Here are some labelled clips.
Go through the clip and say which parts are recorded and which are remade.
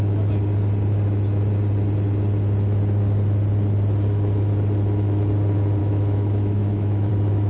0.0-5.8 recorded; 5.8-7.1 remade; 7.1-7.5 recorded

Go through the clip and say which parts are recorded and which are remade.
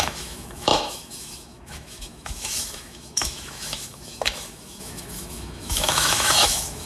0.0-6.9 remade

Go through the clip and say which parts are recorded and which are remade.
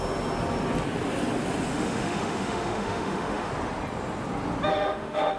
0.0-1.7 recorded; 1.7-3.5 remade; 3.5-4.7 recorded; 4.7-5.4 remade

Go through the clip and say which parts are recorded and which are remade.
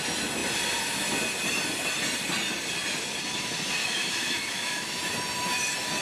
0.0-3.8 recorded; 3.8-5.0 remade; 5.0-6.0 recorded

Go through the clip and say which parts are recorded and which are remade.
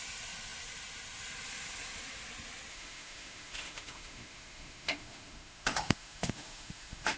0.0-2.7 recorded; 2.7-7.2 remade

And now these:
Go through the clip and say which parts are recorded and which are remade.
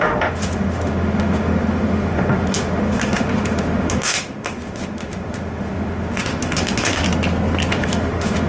0.0-7.0 remade; 7.0-7.7 recorded; 7.7-8.5 remade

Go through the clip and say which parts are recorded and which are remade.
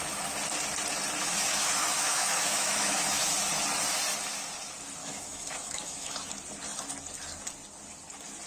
0.0-1.2 recorded; 1.2-3.3 remade; 3.3-5.0 recorded; 5.0-6.3 remade; 6.3-8.5 recorded